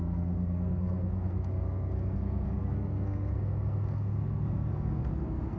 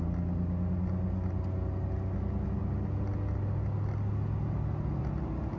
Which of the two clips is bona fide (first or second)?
second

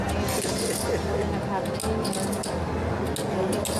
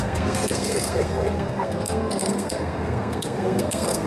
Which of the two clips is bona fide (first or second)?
first